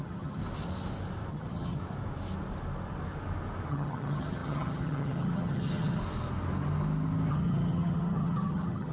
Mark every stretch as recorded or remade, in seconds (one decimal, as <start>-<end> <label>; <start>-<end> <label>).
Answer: 0.0-0.4 remade; 0.4-1.3 recorded; 1.3-1.8 remade; 1.8-3.7 recorded; 3.7-6.0 remade; 6.0-7.3 recorded; 7.3-8.9 remade